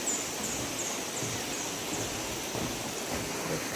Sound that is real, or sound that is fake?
real